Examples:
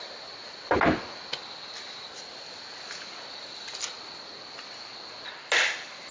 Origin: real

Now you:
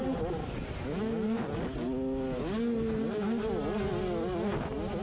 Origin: real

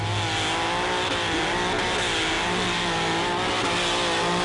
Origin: real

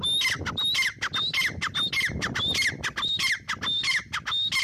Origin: real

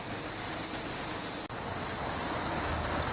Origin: real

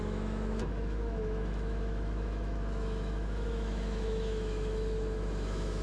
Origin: fake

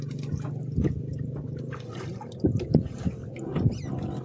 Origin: real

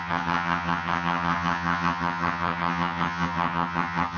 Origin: fake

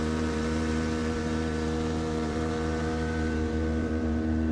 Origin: fake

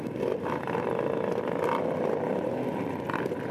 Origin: real